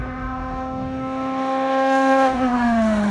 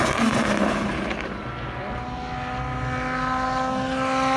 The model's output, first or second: first